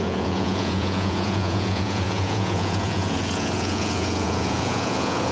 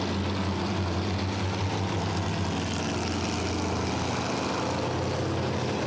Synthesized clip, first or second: first